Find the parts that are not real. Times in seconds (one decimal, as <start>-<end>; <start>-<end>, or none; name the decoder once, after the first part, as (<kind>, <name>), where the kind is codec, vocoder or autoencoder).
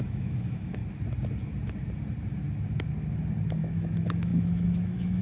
0.0-0.8 (autoencoder, DAC-VAE); 3.5-5.2